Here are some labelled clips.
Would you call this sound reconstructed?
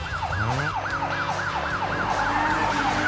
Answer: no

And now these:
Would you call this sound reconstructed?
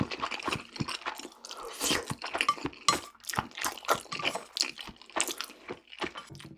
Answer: no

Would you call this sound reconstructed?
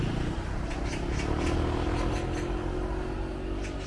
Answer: no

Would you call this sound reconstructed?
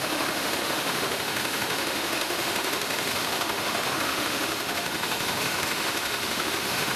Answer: yes